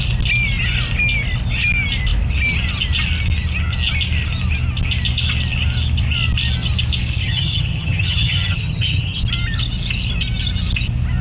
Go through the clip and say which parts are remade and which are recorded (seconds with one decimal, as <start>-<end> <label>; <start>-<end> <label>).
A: 0.0-7.2 recorded; 7.2-9.2 remade; 9.2-11.2 recorded